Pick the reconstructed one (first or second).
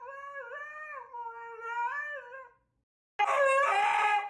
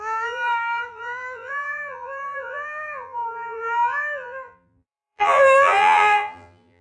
second